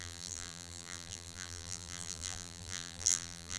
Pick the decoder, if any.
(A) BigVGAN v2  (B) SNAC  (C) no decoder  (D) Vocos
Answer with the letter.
A